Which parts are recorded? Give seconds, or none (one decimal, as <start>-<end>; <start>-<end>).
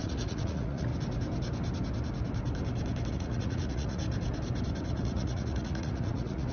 0.9-3.1; 4.0-4.8